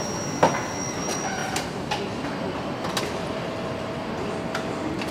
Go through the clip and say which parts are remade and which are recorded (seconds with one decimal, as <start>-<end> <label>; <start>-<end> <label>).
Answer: 0.0-5.1 recorded